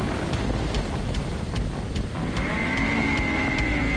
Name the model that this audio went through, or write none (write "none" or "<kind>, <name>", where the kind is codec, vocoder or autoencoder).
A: none